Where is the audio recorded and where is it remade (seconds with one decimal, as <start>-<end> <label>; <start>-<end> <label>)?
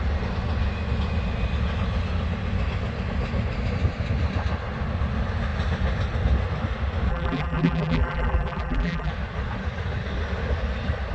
0.0-7.1 recorded; 7.1-9.1 remade; 9.1-11.1 recorded